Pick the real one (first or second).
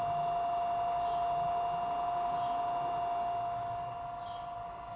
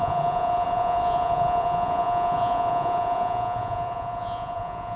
first